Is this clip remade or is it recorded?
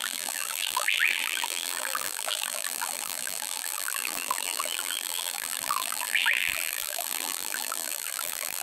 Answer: remade